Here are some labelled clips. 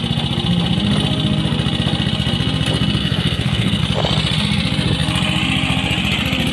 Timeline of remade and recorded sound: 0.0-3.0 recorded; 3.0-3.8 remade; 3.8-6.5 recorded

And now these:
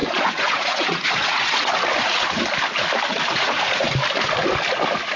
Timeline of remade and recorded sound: 0.0-2.4 remade; 2.4-3.1 recorded; 3.1-3.9 remade; 3.9-5.2 recorded

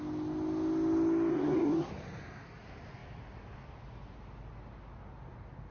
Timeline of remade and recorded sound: 0.0-1.3 recorded; 1.3-1.9 remade; 1.9-5.7 recorded

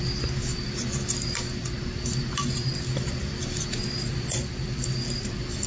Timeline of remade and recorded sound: 0.0-5.7 recorded

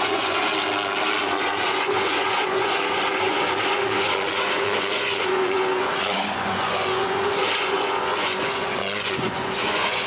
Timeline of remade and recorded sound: 0.0-0.5 remade; 0.5-1.2 recorded; 1.2-10.1 remade

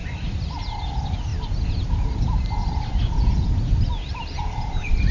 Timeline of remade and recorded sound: 0.0-1.3 remade; 1.3-4.4 recorded; 4.4-5.1 remade